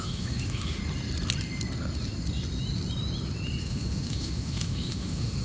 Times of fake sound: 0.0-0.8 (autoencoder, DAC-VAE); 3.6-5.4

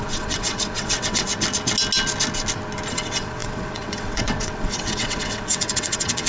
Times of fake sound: 0.0-1.3 (vocoder, WaveNeXt); 2.9-6.3